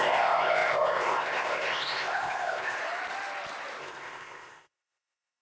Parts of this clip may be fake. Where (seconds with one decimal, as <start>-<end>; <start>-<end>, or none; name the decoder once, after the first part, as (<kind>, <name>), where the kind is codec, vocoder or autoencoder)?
0.0-2.8 (codec, ZipCodec); 3.8-5.4